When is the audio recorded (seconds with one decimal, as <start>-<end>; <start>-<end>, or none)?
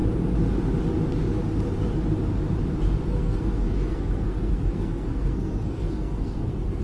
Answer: 0.0-3.1